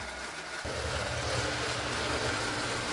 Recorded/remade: recorded